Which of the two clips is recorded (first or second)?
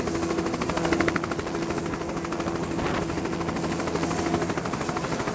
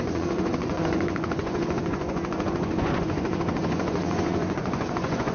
first